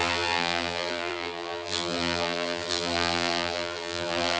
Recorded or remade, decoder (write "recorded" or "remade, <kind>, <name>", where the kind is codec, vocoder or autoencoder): remade, vocoder, BigVGAN v2